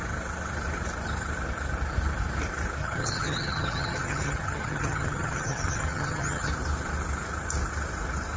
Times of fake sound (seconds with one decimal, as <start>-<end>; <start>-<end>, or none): 2.8-6.5